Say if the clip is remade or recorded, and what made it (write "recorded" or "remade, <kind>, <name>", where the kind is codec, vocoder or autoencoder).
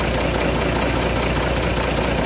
recorded